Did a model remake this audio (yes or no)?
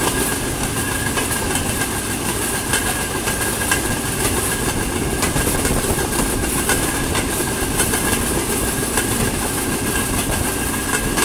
no